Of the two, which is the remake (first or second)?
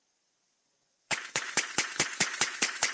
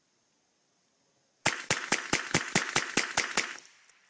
first